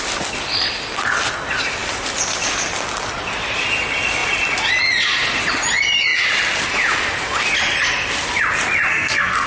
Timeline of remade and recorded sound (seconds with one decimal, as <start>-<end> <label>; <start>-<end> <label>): 0.0-8.9 recorded; 8.9-9.5 remade